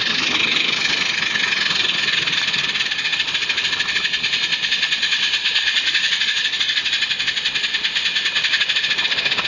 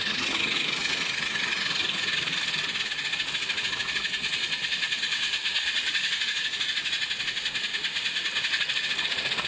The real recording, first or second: first